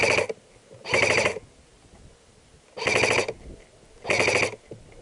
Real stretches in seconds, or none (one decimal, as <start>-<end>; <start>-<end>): 0.0-0.8; 1.4-5.0